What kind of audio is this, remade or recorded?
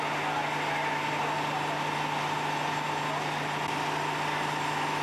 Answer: recorded